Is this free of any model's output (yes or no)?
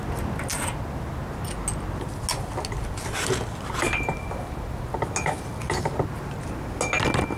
yes